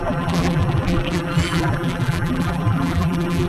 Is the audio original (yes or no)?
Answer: no